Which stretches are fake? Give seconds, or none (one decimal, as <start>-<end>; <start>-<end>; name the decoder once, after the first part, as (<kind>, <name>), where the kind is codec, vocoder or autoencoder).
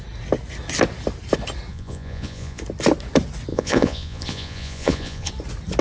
1.7-2.6 (vocoder, Vocos); 3.5-5.3